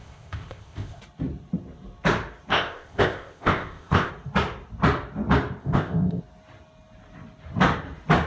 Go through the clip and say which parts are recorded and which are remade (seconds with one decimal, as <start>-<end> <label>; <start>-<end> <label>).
0.0-1.0 remade; 1.0-2.5 recorded; 2.5-4.1 remade; 4.1-5.6 recorded; 5.6-6.2 remade; 6.2-8.3 recorded